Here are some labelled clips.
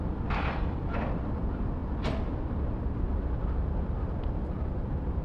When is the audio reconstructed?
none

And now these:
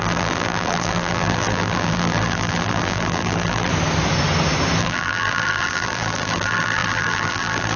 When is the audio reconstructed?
0.0-3.7; 4.8-7.8

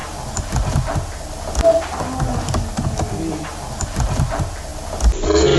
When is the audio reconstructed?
none

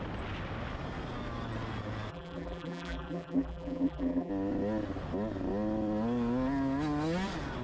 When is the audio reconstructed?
2.1-4.3

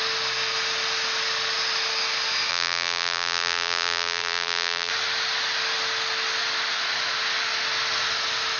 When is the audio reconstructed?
2.5-4.9